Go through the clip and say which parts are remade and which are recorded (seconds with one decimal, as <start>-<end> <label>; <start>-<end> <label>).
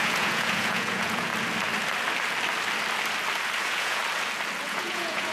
0.0-1.3 remade; 1.3-3.6 recorded; 3.6-4.0 remade; 4.0-4.6 recorded; 4.6-5.3 remade